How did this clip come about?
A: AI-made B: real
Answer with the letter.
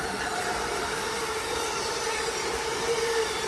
A